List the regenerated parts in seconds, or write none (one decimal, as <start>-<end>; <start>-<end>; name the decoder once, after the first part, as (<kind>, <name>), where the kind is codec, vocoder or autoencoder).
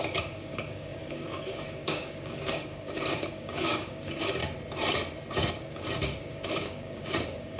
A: 0.0-4.4 (codec, DAC); 5.5-7.6